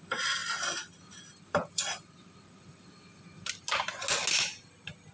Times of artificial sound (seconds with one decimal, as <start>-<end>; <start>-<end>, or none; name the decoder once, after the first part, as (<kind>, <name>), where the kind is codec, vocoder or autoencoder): 0.4-3.2 (vocoder, BigVGAN v2)